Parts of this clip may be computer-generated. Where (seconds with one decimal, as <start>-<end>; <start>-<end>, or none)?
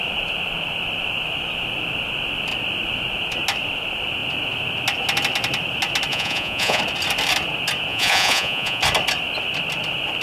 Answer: 6.1-6.8; 7.9-8.8